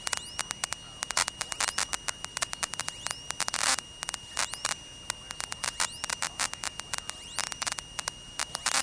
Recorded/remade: recorded